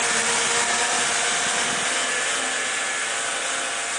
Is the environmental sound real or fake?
real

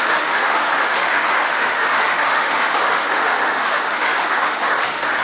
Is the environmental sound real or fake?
fake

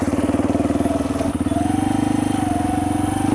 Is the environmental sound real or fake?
real